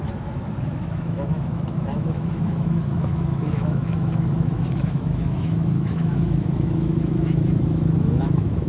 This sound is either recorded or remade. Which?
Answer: remade